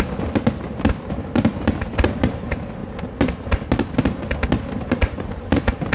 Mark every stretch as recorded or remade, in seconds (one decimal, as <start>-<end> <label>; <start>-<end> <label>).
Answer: 0.0-5.9 recorded